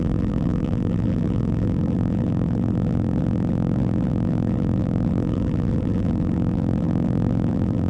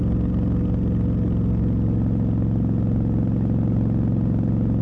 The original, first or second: second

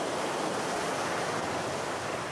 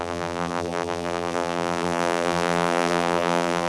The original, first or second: first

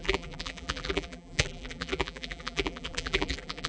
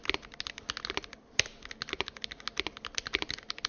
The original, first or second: second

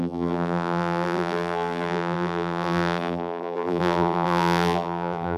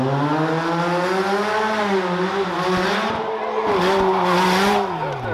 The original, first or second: second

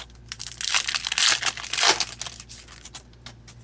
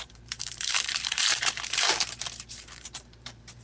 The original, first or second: first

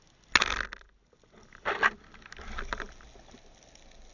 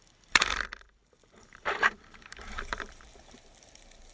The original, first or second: first